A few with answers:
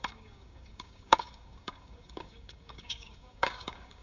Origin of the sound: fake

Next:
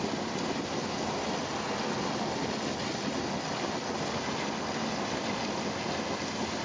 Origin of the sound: real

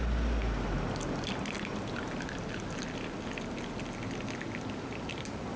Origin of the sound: real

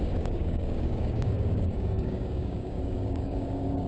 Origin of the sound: fake